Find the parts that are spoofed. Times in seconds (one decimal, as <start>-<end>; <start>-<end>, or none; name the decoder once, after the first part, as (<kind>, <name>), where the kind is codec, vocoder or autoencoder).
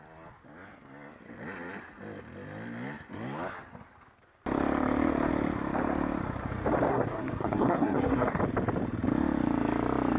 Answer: 6.9-8.4 (codec, SNAC)